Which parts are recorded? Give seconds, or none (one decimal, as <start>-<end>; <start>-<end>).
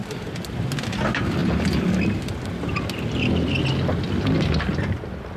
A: 0.0-5.4